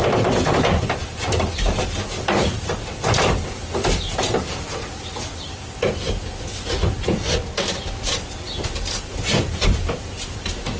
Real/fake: fake